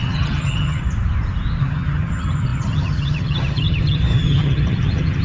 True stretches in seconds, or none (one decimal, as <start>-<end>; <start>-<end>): 0.8-1.6